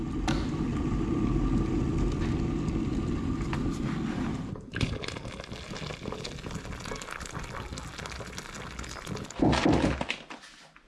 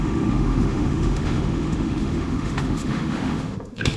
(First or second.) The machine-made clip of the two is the second